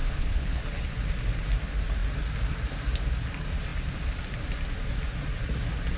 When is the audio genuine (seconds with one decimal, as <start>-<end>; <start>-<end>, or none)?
0.6-6.0